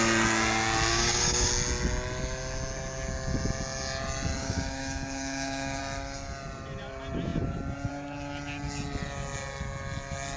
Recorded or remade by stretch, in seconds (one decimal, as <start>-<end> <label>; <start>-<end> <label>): 0.0-0.9 recorded; 0.9-1.5 remade; 1.5-4.4 recorded; 4.4-5.8 remade; 5.8-10.4 recorded